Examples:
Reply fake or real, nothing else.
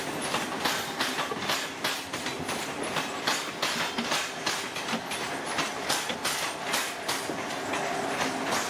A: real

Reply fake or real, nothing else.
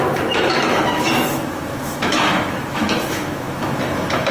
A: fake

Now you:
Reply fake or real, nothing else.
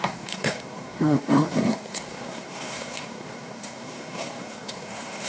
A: fake